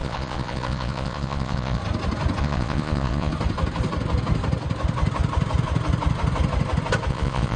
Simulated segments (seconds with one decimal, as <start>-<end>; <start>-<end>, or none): 0.0-1.8; 2.4-3.3; 7.1-7.6